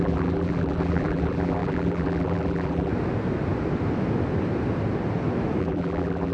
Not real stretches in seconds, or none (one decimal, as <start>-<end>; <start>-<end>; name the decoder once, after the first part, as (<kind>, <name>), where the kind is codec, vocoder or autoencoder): 0.0-2.9 (vocoder, BigVGAN v2); 5.6-6.3